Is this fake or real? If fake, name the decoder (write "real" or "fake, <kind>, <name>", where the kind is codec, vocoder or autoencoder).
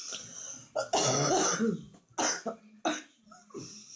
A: real